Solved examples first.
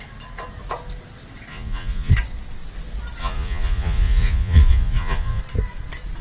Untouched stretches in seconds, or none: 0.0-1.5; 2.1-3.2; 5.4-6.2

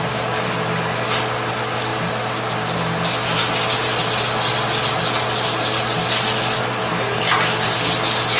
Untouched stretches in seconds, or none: 0.0-8.4